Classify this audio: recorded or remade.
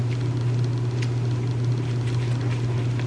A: recorded